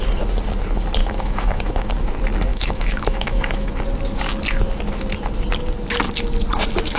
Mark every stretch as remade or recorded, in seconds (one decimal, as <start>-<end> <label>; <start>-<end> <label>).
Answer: 0.0-1.0 recorded; 1.0-1.9 remade; 1.9-2.5 recorded; 2.5-3.8 remade; 3.8-7.0 recorded